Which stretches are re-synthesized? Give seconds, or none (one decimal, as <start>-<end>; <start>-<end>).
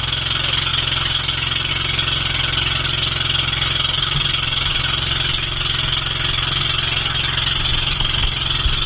none